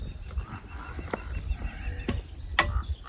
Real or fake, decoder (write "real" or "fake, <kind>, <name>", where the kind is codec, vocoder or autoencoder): real